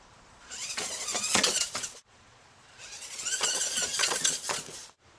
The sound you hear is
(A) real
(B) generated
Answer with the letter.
B